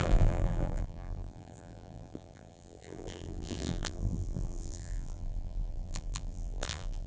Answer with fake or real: fake